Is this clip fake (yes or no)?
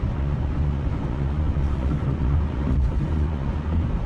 yes